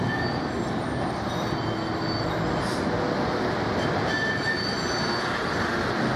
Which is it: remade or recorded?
recorded